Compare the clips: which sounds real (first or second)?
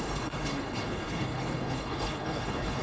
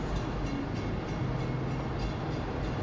second